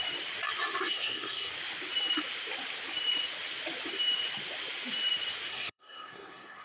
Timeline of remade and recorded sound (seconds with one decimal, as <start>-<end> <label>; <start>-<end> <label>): 0.0-0.9 recorded; 0.9-1.5 remade; 1.5-5.5 recorded; 5.5-6.6 remade